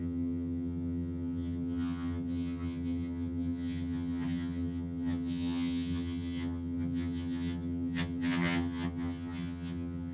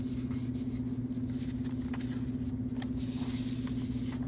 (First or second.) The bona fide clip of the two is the second